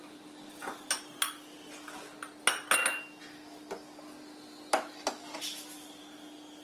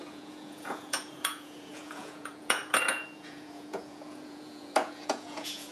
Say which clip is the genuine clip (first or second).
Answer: first